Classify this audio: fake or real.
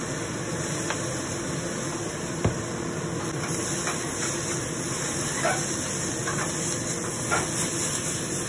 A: real